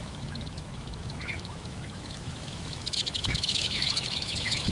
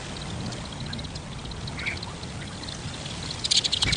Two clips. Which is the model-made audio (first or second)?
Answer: first